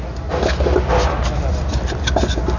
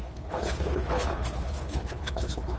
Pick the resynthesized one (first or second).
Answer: second